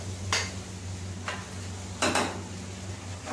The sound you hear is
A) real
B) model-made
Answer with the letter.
A